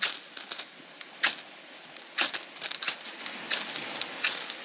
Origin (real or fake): real